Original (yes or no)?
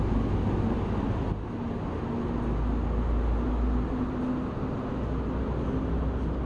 yes